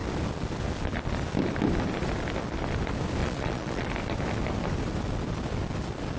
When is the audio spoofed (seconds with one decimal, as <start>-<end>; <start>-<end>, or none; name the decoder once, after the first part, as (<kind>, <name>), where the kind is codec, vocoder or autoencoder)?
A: 3.2-3.9 (vocoder, Vocos)